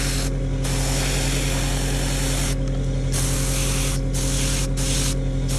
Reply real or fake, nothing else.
real